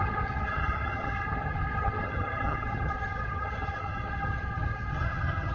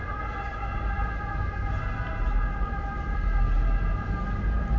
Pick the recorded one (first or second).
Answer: second